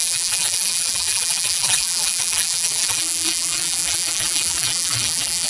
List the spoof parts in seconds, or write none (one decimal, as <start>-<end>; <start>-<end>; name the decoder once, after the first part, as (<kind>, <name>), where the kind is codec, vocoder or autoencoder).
0.0-5.5 (vocoder, BigVGAN v2)